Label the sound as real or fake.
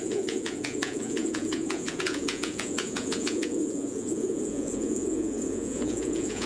fake